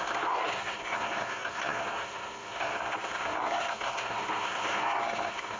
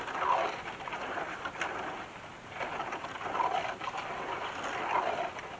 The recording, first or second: second